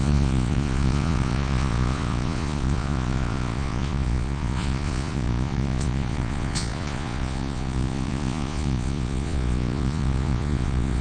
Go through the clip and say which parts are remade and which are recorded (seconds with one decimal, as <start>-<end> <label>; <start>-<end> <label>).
0.0-11.0 remade